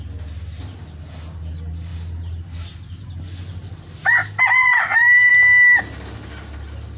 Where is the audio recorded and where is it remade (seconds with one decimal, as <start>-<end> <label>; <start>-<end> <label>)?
0.0-7.0 recorded